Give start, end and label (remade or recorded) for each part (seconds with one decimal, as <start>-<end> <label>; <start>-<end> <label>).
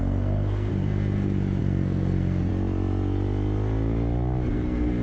0.0-0.7 remade; 0.7-1.6 recorded; 1.6-2.5 remade; 2.5-4.5 recorded; 4.5-5.0 remade